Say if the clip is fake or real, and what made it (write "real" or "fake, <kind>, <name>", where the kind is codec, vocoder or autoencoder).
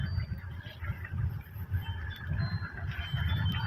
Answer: real